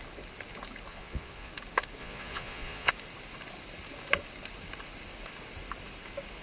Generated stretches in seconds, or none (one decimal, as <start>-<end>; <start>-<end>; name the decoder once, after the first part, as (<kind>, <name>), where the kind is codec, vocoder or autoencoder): 0.9-1.5 (vocoder, Vocos); 2.0-2.9